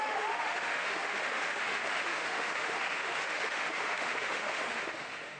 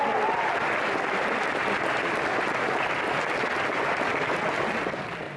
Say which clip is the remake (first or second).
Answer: first